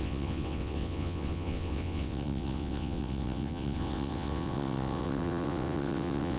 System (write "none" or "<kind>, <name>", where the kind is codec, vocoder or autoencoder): vocoder, WaveNeXt